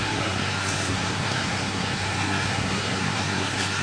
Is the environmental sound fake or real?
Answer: fake